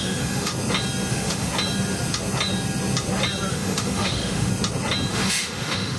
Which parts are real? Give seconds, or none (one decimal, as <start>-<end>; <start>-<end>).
0.5-1.1; 1.5-3.5; 4.5-5.1